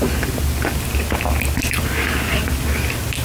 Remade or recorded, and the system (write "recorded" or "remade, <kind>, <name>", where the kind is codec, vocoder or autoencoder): recorded